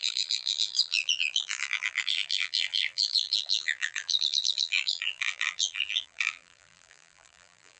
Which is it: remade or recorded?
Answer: remade